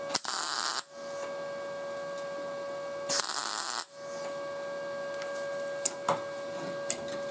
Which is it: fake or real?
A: real